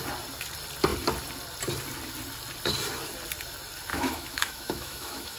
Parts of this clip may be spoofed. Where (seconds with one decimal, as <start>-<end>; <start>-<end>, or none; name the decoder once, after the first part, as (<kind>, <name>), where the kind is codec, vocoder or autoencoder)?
3.9-5.4 (autoencoder, DAC-VAE)